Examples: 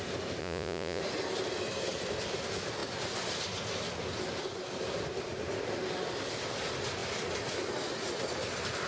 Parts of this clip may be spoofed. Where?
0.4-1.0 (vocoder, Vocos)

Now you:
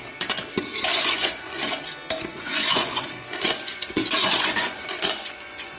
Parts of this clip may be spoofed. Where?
0.9-1.6 (vocoder, Vocos); 2.3-5.8

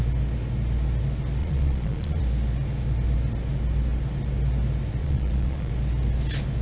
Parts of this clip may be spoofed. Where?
1.4-2.2 (vocoder, Vocos); 5.0-5.7

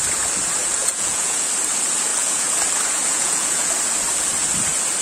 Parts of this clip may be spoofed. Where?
0.6-1.5 (vocoder, Vocos); 2.1-2.6; 3.1-3.7

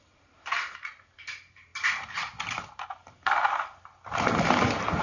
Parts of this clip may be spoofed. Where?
none

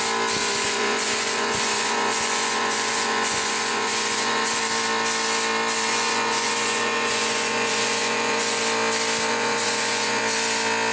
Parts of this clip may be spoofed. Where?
0.4-4.6 (vocoder, Vocos); 5.9-8.6; 9.3-10.2

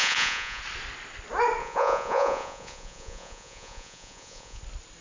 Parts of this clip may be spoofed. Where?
0.0-0.6 (vocoder, Vocos); 1.6-4.6

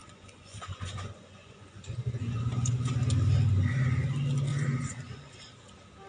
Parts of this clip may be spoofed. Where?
0.0-2.9 (vocoder, Vocos); 4.5-5.4